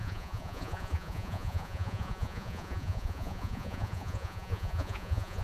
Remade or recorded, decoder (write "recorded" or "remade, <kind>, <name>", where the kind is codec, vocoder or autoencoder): remade, vocoder, Vocos